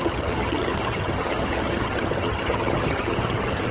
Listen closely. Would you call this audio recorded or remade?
remade